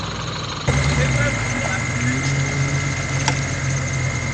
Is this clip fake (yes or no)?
no